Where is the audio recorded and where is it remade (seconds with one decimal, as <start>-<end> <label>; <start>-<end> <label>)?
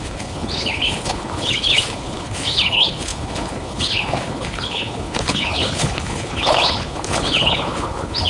0.0-8.3 remade